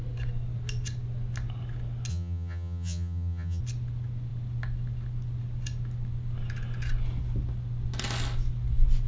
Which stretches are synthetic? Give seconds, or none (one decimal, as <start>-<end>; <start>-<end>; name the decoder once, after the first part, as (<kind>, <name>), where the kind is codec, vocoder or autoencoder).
2.1-3.6 (vocoder, HiFi-GAN)